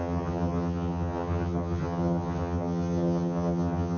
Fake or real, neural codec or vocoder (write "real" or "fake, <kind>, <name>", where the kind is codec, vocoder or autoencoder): fake, vocoder, HiFi-GAN